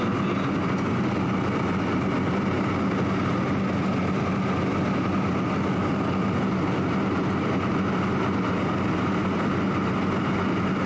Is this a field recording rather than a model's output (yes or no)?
yes